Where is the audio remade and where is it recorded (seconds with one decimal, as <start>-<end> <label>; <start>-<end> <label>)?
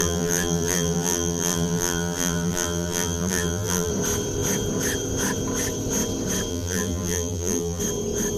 0.0-3.9 remade; 3.9-6.5 recorded; 6.5-7.8 remade; 7.8-8.4 recorded